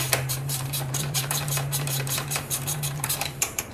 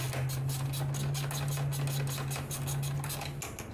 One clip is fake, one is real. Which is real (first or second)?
second